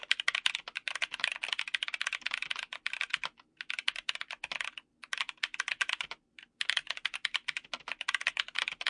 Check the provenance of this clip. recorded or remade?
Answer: recorded